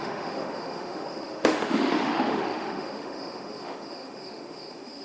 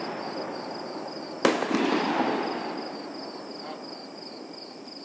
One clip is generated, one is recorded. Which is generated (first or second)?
first